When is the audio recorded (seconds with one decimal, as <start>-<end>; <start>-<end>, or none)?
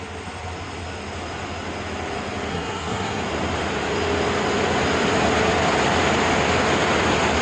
0.0-2.5; 3.2-7.4